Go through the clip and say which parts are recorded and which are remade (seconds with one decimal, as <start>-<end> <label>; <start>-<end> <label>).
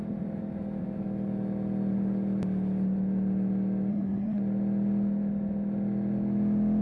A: 0.0-3.9 recorded; 3.9-4.4 remade; 4.4-6.8 recorded